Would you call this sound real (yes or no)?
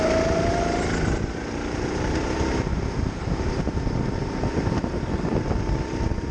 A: yes